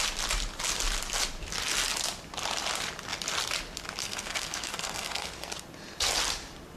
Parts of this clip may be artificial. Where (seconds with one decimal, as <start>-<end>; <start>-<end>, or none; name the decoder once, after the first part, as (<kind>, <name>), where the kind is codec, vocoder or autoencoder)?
4.0-5.5 (codec, SNAC)